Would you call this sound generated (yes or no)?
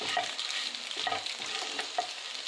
no